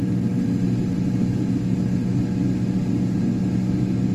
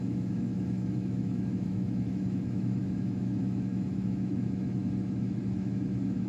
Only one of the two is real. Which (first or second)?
first